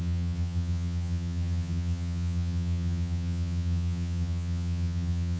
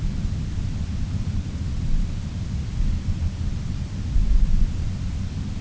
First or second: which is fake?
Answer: first